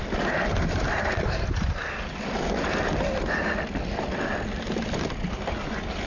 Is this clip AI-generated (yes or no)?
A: no